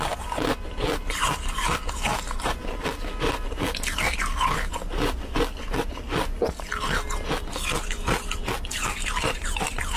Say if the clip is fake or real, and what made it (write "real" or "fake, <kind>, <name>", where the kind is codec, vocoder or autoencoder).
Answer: real